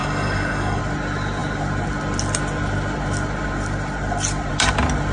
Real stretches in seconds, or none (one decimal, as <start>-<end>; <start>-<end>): 0.8-5.1